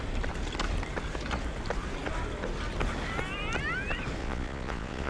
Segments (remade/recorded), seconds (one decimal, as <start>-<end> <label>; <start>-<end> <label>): 0.0-4.2 recorded; 4.2-5.1 remade